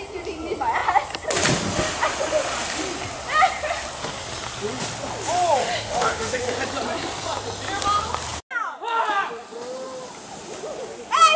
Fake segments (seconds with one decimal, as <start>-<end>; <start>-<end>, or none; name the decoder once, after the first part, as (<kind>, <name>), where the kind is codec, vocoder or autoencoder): 5.6-6.4 (autoencoder, DAC-VAE)